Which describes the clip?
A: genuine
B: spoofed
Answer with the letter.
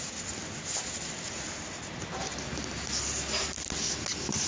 A